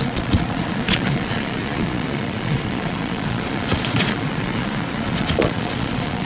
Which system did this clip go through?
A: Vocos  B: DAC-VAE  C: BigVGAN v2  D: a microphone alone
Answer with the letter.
A